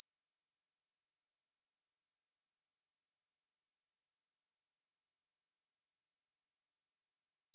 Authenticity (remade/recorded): remade